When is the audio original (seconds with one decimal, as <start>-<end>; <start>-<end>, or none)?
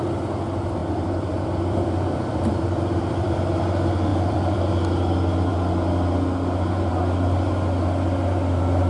0.0-0.8; 3.6-4.1; 4.7-8.9